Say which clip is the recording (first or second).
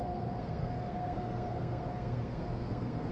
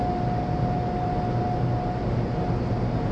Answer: second